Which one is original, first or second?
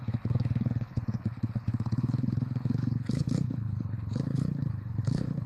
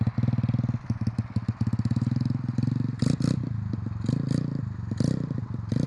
second